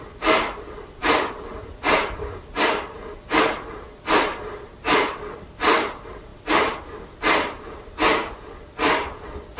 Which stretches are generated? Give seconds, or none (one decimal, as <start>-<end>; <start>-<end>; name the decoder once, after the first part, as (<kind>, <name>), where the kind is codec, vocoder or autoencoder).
0.0-9.6 (vocoder, BigVGAN v2)